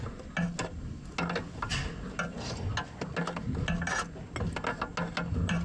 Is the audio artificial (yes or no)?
no